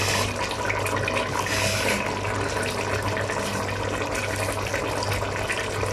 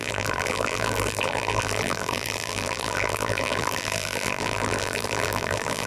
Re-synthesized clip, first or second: second